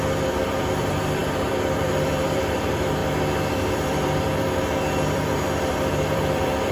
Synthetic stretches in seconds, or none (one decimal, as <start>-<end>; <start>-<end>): 0.0-3.0; 3.7-6.7